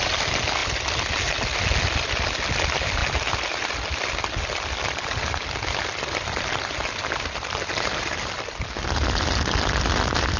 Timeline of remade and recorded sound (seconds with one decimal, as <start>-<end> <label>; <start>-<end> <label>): 0.0-10.4 recorded